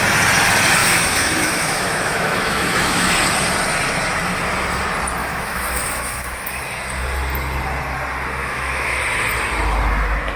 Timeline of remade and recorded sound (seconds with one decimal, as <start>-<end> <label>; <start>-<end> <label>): 0.0-0.8 recorded; 0.8-3.1 remade; 3.1-5.2 recorded; 5.2-6.6 remade; 6.6-8.4 recorded; 8.4-9.0 remade; 9.0-10.4 recorded